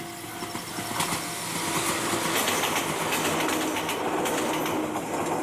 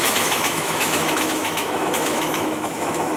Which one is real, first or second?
first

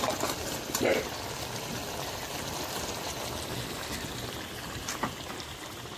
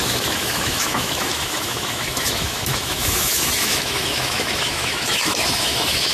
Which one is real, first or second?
first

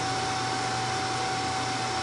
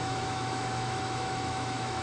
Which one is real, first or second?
first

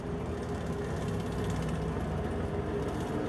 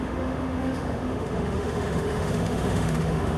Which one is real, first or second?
first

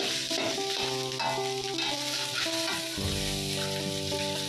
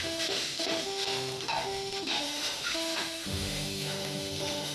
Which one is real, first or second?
first